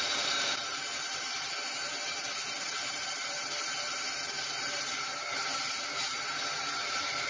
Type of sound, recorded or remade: remade